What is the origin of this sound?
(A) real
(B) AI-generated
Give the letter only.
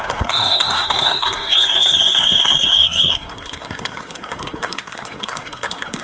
B